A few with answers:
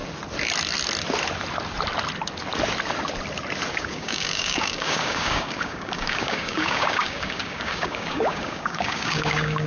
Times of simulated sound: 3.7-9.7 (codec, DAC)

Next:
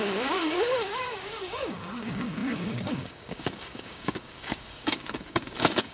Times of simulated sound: 0.0-5.9 (codec, DAC)

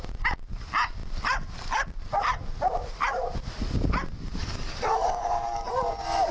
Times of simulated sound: 4.4-5.7 (codec, DAC)